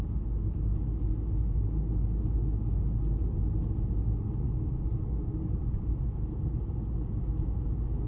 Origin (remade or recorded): recorded